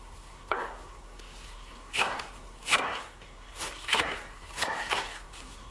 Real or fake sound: fake